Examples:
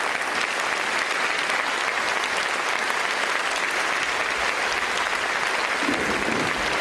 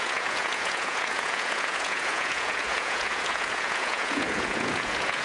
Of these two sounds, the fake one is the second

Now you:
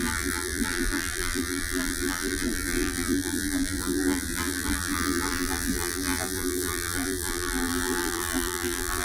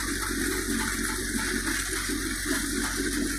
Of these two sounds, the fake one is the first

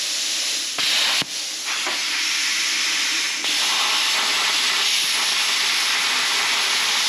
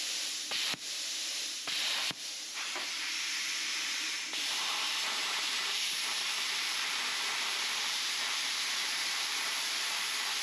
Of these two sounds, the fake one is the second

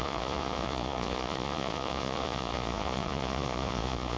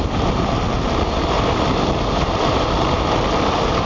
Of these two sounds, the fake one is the first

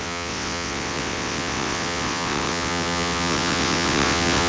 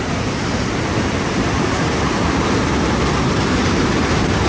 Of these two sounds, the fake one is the first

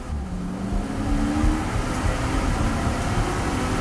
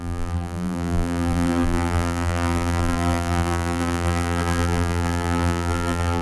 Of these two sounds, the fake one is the second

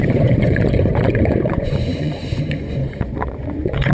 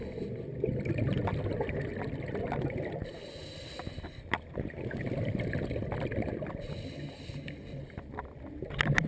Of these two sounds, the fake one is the first